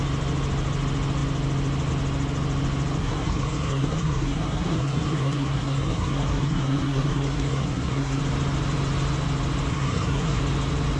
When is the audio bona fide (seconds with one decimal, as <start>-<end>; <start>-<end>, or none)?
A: 0.0-3.0; 8.2-9.7; 10.4-11.0